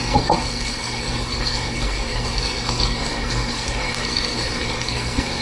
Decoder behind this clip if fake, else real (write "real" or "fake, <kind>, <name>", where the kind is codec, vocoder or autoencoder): fake, codec, SNAC